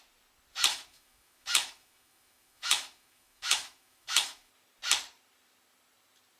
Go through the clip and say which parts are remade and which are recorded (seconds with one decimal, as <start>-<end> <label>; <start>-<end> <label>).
0.0-0.7 recorded; 0.7-4.5 remade; 4.5-6.4 recorded

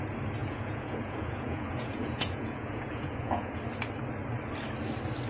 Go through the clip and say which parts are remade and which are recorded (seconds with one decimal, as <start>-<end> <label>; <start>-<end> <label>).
0.0-0.4 recorded; 0.4-3.6 remade; 3.6-5.3 recorded

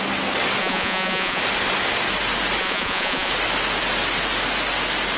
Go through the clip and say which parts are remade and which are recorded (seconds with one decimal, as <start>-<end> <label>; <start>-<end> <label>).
0.0-0.6 recorded; 0.6-1.4 remade; 1.4-2.6 recorded; 2.6-3.3 remade; 3.3-5.2 recorded

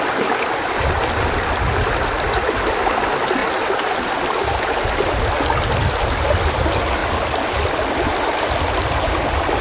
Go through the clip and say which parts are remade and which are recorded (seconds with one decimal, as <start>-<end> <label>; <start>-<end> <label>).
0.0-7.0 recorded; 7.0-8.3 remade; 8.3-9.6 recorded

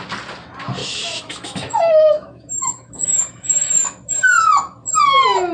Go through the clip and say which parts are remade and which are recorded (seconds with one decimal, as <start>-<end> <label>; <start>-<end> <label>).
0.0-0.8 recorded; 0.8-4.1 remade; 4.1-5.5 recorded

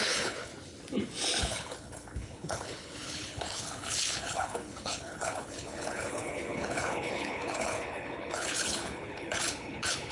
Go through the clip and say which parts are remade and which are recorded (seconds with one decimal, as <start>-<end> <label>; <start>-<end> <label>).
0.0-0.5 remade; 0.5-1.4 recorded; 1.4-10.1 remade

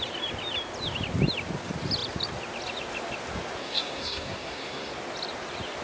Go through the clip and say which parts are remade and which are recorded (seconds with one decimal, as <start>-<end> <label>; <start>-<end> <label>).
0.0-3.6 recorded; 3.6-4.9 remade; 4.9-5.8 recorded

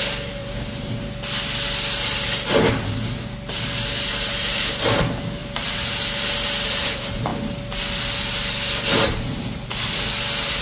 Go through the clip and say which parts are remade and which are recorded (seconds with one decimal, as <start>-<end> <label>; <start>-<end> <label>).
0.0-0.4 recorded; 0.4-0.9 remade; 0.9-5.4 recorded; 5.4-5.9 remade; 5.9-10.6 recorded